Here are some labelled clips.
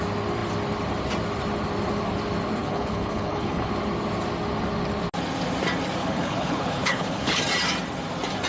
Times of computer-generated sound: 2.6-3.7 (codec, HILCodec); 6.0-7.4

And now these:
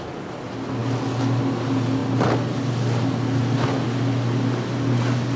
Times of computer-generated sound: none

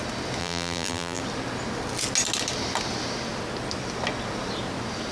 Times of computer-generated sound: 0.4-1.2 (vocoder, BigVGAN v2)

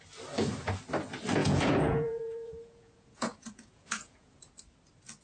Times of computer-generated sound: 1.4-4.5 (vocoder, Vocos)

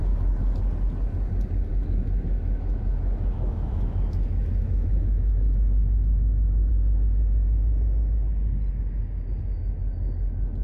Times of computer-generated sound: 1.7-6.7 (autoencoder, DAC-VAE)

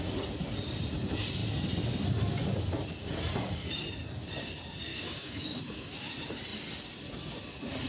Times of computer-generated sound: 4.9-6.1 (autoencoder, DAC-VAE)

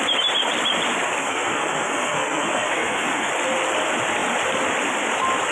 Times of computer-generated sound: 1.2-3.3 (codec, SNAC)